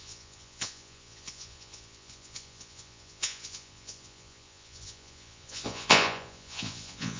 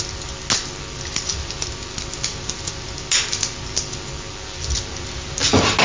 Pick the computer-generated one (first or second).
first